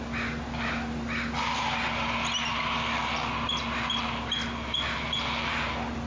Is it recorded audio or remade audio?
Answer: recorded